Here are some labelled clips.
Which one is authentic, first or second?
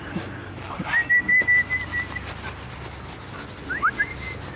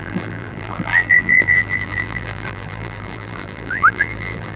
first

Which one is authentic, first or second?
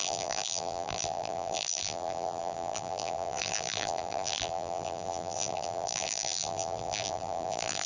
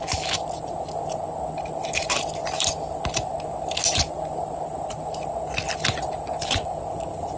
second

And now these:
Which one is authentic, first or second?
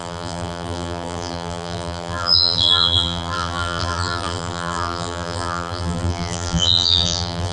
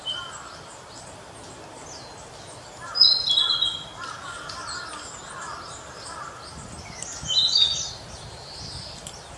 second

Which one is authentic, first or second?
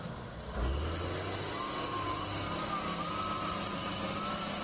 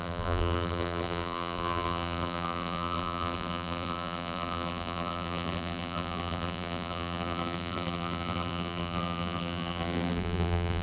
first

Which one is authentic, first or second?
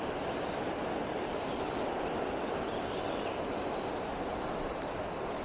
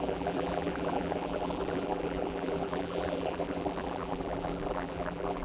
first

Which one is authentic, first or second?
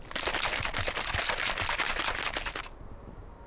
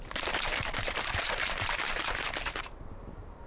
first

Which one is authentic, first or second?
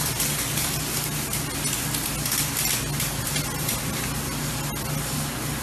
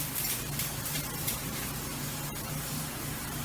first